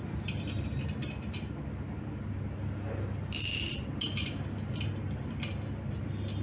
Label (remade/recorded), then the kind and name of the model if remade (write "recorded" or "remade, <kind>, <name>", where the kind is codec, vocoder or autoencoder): recorded